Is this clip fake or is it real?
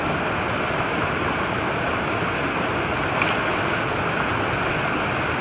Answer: real